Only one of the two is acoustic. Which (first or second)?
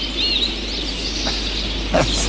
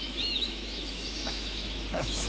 first